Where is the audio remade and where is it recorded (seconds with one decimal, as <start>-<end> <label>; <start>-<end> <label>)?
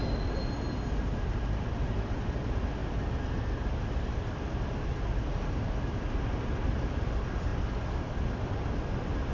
0.0-9.3 recorded